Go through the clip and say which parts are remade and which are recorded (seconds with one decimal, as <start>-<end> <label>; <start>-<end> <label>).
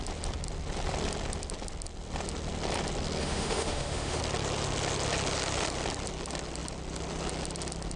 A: 0.0-3.2 recorded; 3.2-4.2 remade; 4.2-8.0 recorded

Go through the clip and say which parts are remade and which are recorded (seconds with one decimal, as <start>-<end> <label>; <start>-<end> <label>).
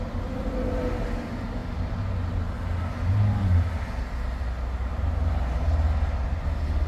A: 0.0-6.9 recorded